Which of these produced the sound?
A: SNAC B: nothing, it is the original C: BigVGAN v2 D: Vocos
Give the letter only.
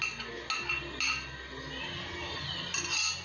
B